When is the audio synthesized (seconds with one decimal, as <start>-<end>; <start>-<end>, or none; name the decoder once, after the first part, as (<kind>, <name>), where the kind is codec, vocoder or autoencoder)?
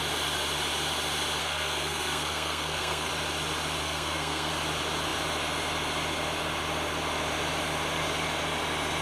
1.4-3.1 (codec, SNAC); 3.8-4.5